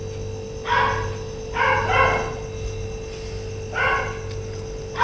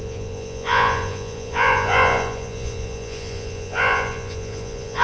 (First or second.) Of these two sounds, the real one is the first